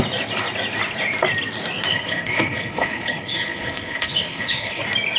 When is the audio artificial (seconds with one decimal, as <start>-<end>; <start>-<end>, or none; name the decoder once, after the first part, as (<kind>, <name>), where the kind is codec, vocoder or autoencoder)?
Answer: 1.9-4.8 (codec, HILCodec)